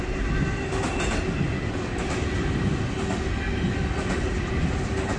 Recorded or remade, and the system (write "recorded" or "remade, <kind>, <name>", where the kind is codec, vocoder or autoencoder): recorded